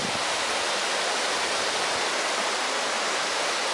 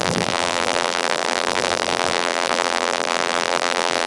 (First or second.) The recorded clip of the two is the first